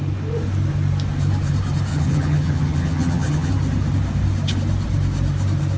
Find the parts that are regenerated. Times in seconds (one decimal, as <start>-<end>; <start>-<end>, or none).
1.9-3.5